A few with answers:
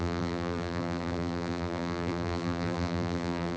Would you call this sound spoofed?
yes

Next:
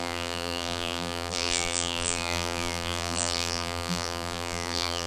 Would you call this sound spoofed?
yes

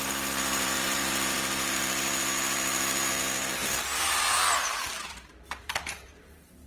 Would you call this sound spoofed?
yes